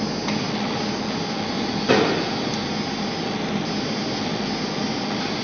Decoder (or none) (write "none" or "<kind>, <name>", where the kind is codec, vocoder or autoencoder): none